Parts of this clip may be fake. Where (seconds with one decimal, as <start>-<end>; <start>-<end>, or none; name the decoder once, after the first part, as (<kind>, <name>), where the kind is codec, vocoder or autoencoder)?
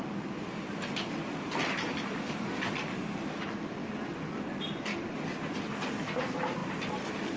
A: none